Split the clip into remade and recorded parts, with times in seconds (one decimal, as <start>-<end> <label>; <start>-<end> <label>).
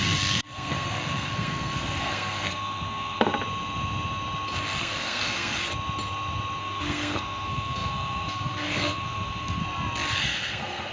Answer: 0.0-3.3 remade; 3.3-4.8 recorded; 4.8-5.6 remade; 5.6-6.6 recorded; 6.6-9.6 remade; 9.6-10.2 recorded; 10.2-10.9 remade